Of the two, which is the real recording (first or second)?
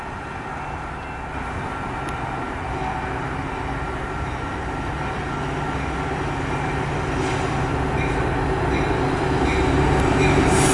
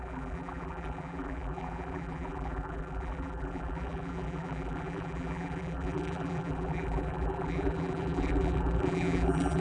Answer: first